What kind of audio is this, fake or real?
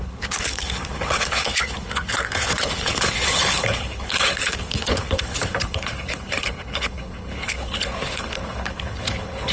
fake